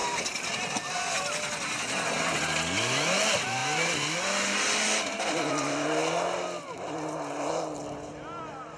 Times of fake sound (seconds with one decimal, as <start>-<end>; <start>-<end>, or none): none